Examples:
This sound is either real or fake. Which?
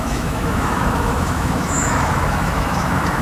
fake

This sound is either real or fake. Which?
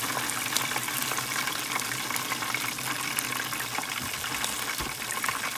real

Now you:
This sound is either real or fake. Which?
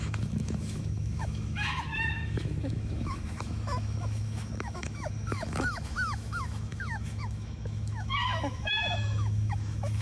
fake